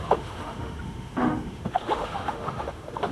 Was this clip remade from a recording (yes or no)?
yes